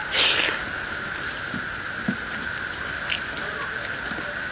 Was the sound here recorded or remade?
recorded